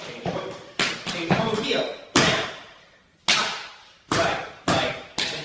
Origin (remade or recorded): remade